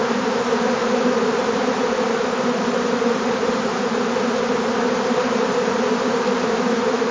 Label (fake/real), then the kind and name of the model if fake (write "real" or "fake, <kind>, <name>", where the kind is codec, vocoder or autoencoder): fake, vocoder, BigVGAN v2